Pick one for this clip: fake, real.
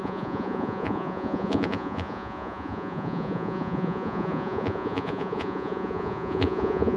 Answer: fake